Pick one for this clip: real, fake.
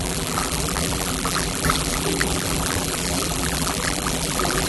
fake